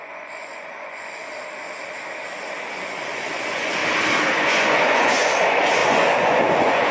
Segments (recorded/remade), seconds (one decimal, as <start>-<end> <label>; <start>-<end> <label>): 0.0-1.2 remade; 1.2-2.7 recorded; 2.7-3.8 remade; 3.8-4.3 recorded; 4.3-6.9 remade